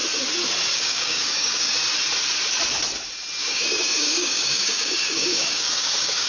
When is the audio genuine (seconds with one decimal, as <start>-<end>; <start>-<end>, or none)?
0.0-0.7; 1.8-3.4